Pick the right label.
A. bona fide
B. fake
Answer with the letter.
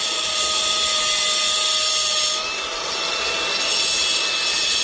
A